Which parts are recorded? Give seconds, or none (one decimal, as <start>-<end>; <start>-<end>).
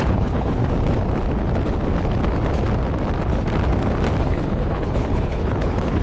0.6-4.2